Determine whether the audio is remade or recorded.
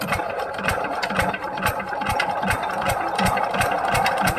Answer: recorded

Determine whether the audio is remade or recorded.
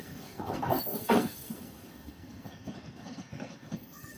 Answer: remade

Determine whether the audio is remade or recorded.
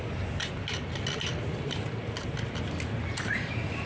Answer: recorded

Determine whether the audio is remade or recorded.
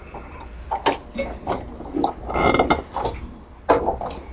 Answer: recorded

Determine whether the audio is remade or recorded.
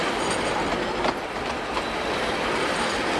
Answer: recorded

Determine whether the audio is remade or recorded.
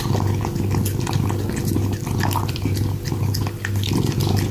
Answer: recorded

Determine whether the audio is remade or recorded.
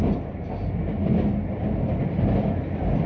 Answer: recorded